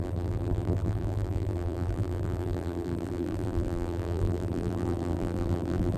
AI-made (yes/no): yes